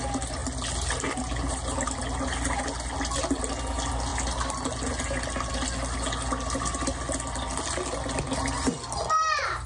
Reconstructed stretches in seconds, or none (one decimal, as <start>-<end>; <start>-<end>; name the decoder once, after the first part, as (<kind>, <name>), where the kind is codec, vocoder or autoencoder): none